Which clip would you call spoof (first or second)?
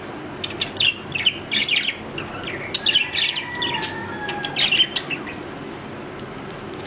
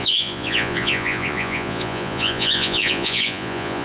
second